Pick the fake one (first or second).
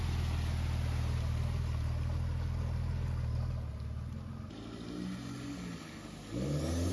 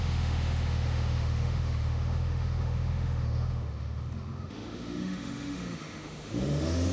second